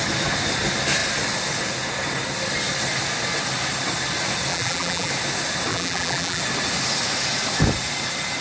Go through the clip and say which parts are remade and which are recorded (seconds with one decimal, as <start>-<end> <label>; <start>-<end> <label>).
0.0-4.5 recorded; 4.5-5.1 remade; 5.1-5.7 recorded; 5.7-6.4 remade; 6.4-8.4 recorded